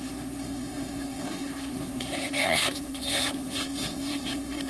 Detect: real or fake fake